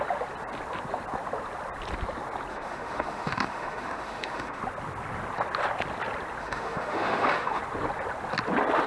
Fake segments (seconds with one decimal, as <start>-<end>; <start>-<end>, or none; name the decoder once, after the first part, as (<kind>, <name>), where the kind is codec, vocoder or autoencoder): 2.5-4.6 (autoencoder, DAC-VAE); 6.4-7.6